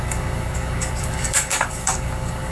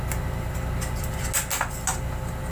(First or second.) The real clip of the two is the second